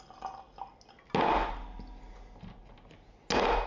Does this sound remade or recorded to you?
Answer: recorded